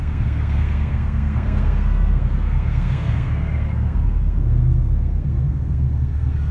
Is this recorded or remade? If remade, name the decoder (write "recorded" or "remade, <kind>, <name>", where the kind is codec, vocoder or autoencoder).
remade, codec, SNAC